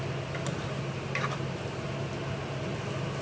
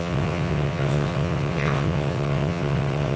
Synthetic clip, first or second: second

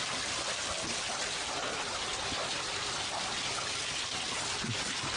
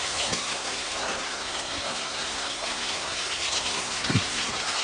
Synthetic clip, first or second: second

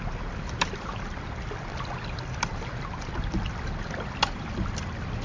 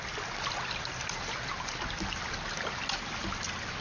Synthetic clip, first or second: first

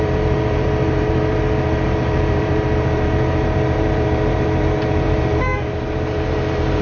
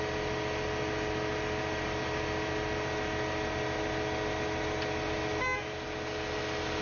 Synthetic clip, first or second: first